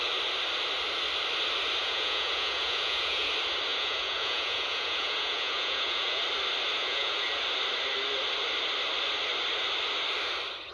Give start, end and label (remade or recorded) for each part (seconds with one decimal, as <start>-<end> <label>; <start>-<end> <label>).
0.0-1.8 recorded; 1.8-3.3 remade; 3.3-3.7 recorded; 3.7-6.2 remade; 6.2-6.8 recorded; 6.8-7.4 remade; 7.4-10.7 recorded